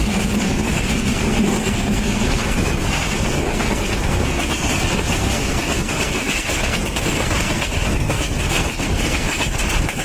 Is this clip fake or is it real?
fake